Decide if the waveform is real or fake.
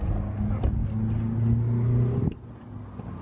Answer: real